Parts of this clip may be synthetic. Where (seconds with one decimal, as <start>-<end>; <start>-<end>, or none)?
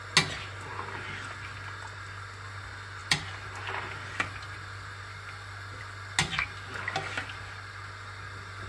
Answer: 3.0-5.8